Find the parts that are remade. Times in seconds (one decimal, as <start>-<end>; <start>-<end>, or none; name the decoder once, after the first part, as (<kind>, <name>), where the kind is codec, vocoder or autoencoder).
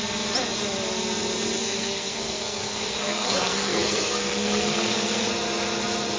1.6-5.3 (codec, SNAC)